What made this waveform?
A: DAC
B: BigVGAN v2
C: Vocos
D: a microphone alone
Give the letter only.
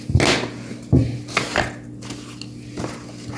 D